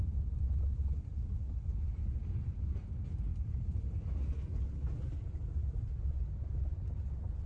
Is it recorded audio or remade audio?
recorded